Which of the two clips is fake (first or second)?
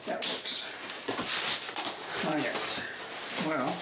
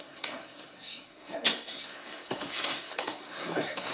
second